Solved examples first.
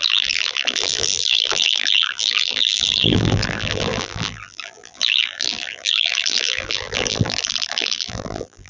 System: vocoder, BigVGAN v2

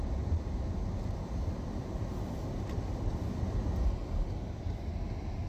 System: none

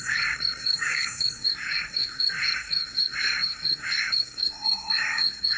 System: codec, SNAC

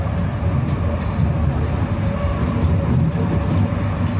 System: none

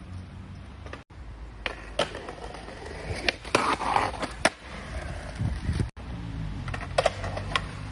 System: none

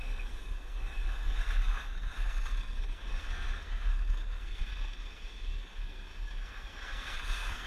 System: codec, SNAC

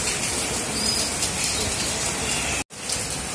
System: none